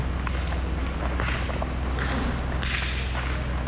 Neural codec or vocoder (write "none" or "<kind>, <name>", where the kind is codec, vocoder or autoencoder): none